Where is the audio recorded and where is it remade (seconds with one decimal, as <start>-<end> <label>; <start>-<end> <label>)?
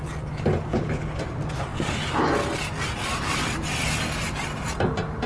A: 0.0-0.7 recorded; 0.7-1.2 remade; 1.2-5.3 recorded